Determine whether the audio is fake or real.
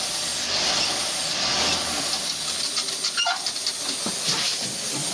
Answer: real